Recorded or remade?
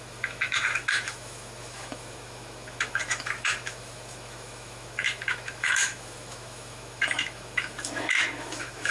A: remade